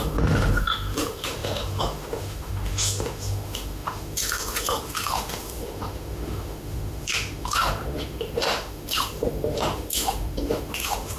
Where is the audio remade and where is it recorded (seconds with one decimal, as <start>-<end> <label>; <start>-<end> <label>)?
0.0-11.2 remade